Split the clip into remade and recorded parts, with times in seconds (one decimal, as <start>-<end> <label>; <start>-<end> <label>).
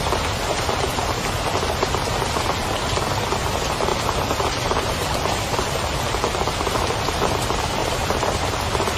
0.0-0.5 recorded; 0.5-1.0 remade; 1.0-3.9 recorded; 3.9-7.3 remade; 7.3-9.0 recorded